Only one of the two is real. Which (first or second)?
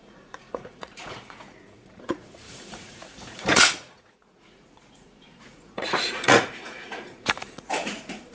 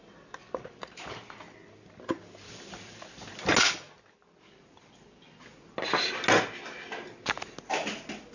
second